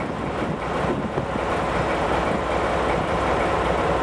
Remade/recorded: recorded